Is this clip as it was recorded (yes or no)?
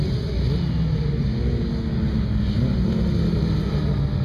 yes